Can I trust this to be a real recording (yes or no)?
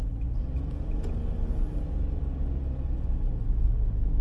yes